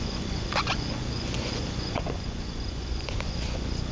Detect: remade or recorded remade